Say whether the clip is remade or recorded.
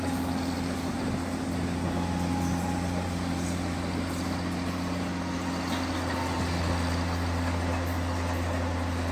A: recorded